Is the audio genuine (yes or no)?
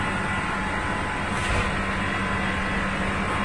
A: yes